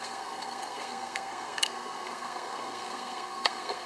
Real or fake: fake